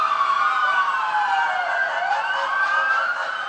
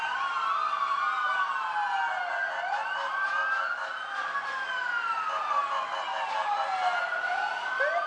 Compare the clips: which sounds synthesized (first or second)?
first